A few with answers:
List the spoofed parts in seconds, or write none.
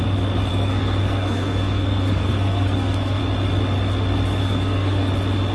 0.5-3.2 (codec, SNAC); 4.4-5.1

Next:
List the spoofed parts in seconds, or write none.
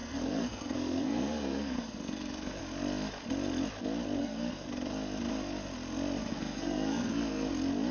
0.0-2.6 (codec, SNAC); 4.2-4.7; 6.2-7.5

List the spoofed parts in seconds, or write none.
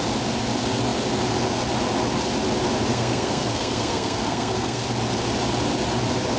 2.9-4.8 (codec, SNAC)